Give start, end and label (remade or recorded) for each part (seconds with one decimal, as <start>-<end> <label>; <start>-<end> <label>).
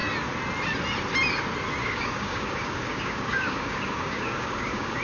0.0-1.8 recorded; 1.8-5.0 remade